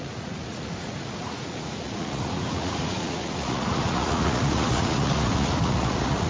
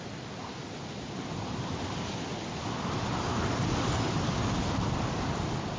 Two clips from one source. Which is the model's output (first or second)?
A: first